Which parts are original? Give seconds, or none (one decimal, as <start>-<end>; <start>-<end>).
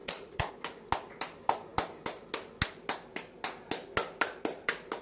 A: 0.5-5.0